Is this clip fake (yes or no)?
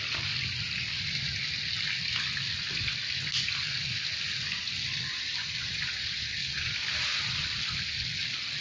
no